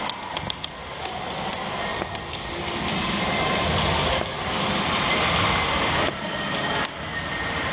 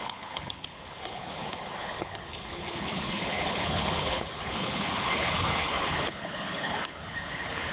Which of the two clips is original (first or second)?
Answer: first